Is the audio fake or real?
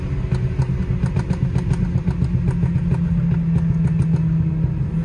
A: real